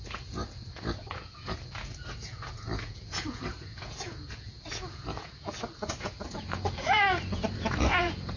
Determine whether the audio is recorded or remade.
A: remade